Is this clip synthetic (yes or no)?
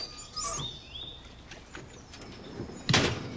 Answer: no